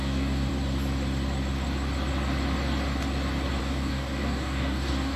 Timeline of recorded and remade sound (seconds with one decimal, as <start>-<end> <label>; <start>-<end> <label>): 0.0-0.5 remade; 0.5-3.6 recorded; 3.6-5.2 remade